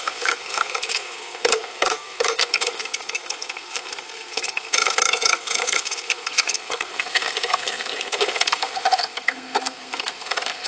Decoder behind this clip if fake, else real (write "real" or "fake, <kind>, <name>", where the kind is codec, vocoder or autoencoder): fake, codec, SNAC